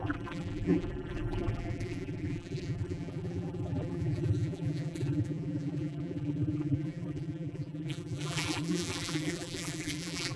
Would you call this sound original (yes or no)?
no